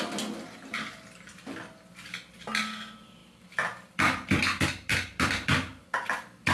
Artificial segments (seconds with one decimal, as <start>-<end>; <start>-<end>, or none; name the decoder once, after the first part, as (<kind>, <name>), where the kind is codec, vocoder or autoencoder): 0.0-6.5 (vocoder, BigVGAN v2)